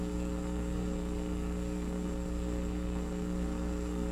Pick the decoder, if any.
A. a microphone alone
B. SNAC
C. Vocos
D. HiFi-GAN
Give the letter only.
B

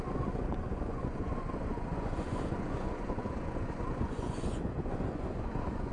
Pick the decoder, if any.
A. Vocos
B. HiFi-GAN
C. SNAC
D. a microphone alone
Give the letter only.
A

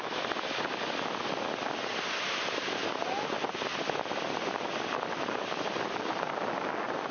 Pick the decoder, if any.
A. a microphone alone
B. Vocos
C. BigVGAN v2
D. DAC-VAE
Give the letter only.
A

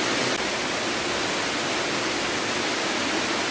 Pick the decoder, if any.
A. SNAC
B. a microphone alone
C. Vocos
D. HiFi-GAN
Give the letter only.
B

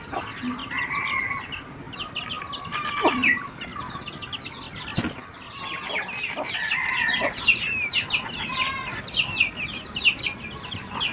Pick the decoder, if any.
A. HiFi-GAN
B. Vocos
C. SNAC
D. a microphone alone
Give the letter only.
D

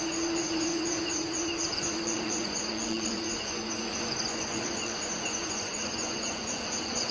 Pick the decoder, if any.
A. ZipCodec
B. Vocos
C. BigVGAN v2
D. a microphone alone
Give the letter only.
B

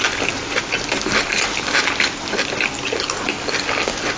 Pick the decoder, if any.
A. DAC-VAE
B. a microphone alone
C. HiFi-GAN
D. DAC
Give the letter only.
B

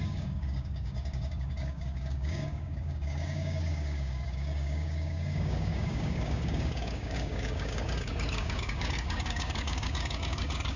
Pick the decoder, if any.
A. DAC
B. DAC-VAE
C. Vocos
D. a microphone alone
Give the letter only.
A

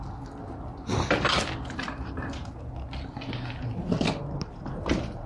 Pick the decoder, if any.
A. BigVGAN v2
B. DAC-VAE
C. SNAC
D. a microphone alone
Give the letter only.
D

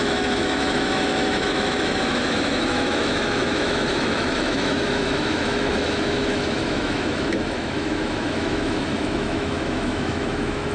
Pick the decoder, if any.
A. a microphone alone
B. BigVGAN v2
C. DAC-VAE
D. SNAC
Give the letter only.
C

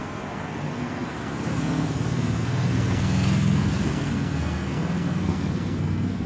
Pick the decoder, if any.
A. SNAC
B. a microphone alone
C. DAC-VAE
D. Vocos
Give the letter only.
A